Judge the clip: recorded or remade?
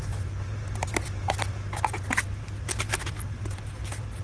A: recorded